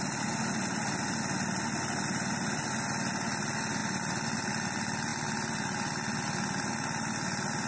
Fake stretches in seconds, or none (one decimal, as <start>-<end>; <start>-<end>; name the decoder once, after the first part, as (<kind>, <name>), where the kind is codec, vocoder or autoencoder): none